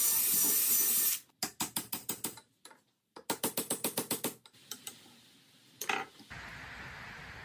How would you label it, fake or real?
real